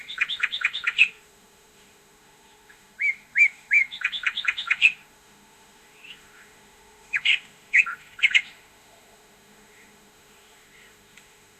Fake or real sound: fake